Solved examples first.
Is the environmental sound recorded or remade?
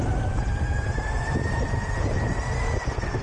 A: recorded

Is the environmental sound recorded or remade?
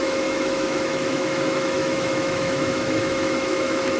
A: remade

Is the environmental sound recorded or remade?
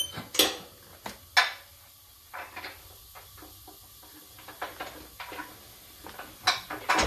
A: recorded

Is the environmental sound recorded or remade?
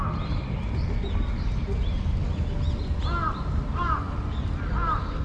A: recorded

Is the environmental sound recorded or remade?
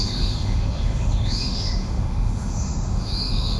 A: remade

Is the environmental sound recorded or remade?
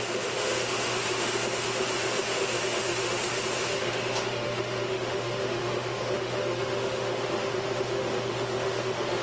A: remade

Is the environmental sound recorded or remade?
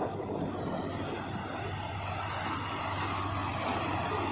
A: recorded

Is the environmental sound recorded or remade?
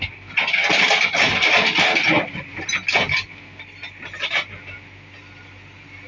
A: recorded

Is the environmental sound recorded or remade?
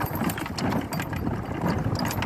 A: recorded